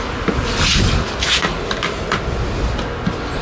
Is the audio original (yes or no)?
yes